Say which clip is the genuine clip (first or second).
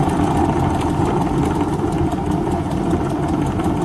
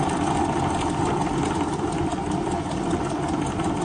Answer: second